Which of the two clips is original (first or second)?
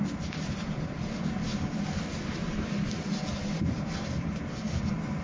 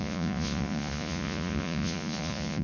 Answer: first